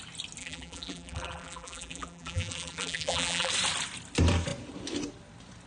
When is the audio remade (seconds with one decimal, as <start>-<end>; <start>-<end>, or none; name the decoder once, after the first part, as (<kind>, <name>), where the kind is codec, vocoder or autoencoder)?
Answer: 0.4-3.5 (vocoder, BigVGAN v2)